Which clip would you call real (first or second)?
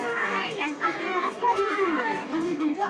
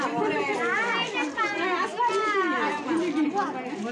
second